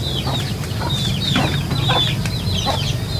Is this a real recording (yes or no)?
yes